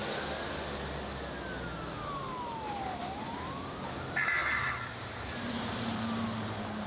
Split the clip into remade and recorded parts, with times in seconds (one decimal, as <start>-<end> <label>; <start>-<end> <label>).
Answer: 0.0-2.7 recorded; 2.7-6.9 remade